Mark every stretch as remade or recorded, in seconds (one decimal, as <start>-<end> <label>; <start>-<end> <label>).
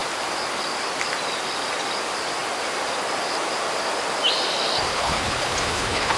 0.0-4.9 recorded; 4.9-6.2 remade